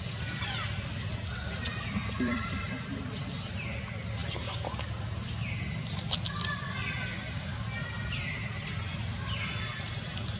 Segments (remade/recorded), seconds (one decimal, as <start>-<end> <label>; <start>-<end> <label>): 0.0-2.0 recorded; 2.0-3.5 remade; 3.5-10.4 recorded